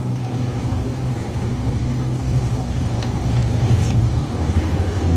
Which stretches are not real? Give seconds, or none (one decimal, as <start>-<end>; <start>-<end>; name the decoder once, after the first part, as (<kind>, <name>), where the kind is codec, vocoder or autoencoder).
0.0-5.2 (codec, DAC)